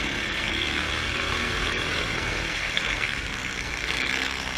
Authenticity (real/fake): fake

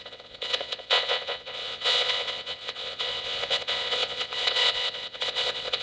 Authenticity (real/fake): fake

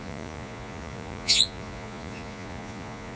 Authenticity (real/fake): fake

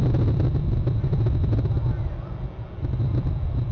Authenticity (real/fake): real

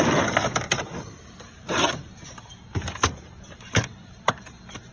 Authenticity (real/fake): fake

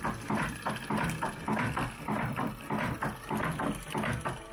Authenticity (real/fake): real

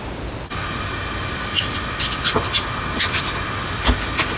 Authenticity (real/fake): real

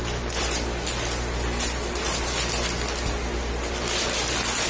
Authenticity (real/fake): real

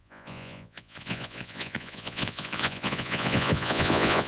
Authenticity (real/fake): fake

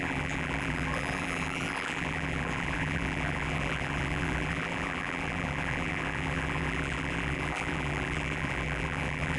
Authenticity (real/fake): fake